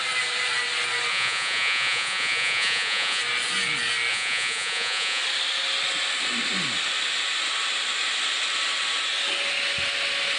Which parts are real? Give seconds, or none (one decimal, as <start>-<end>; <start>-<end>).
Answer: 0.0-1.1; 3.2-4.1; 5.2-10.4